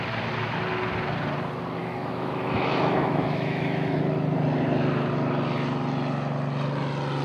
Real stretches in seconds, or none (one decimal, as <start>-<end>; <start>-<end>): 0.0-1.8; 4.0-7.2